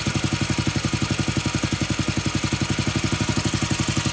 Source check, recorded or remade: recorded